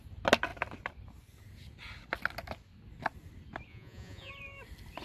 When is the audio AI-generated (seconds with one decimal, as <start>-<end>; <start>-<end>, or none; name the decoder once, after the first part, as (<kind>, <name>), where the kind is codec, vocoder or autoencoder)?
3.7-4.3 (vocoder, Vocos)